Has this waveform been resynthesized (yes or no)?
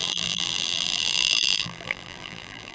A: yes